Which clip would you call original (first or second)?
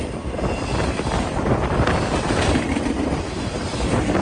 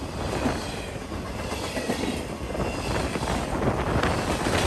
second